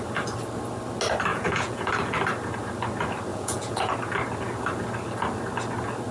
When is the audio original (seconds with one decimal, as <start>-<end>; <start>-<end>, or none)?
0.0-1.3; 1.9-3.3; 3.9-6.1